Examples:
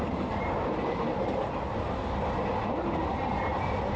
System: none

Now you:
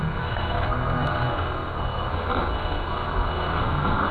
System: codec, SNAC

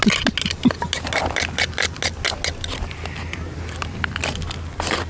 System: none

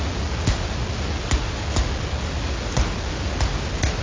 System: none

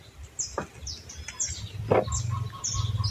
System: none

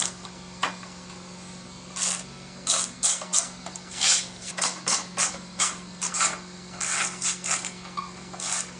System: codec, SNAC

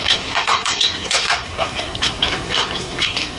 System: codec, SNAC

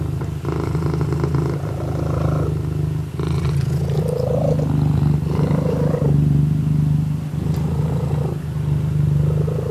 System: none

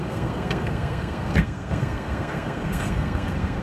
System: codec, SNAC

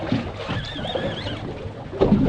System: none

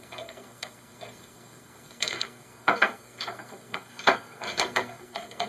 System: codec, SNAC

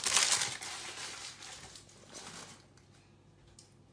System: none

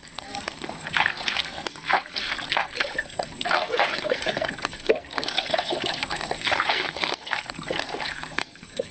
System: codec, SNAC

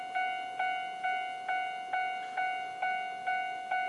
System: none